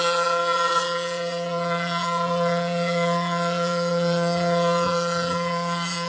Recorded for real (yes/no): no